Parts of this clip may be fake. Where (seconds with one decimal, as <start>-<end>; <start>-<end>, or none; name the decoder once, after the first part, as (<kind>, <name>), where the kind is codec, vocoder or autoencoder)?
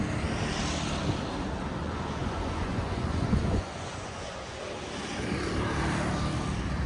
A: 1.8-4.6 (vocoder, Vocos)